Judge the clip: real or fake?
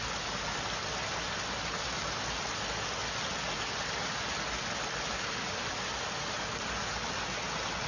real